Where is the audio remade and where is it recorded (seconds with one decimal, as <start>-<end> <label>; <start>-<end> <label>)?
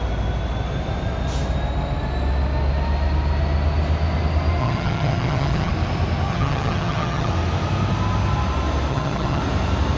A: 0.0-4.6 recorded; 4.6-5.7 remade; 5.7-6.3 recorded; 6.3-7.3 remade; 7.3-8.9 recorded; 8.9-9.4 remade; 9.4-10.0 recorded